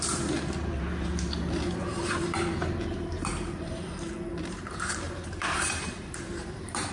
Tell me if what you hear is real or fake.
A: fake